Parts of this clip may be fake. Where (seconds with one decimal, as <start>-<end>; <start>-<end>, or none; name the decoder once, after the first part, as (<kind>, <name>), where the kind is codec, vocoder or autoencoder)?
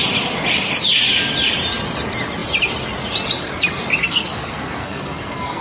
4.0-5.6 (codec, SNAC)